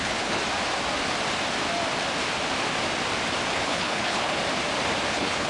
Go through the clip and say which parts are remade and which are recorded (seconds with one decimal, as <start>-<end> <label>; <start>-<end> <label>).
0.0-0.4 remade; 0.4-3.5 recorded; 3.5-4.4 remade; 4.4-5.1 recorded; 5.1-5.5 remade